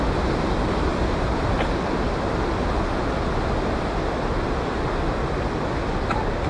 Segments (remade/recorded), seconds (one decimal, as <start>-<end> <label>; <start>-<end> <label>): 0.0-0.9 recorded; 0.9-1.8 remade; 1.8-6.5 recorded